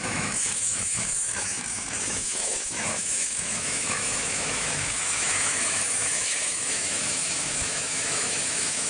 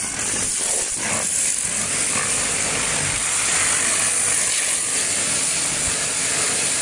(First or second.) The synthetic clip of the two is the first